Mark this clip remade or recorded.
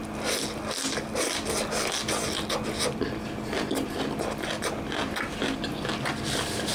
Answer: recorded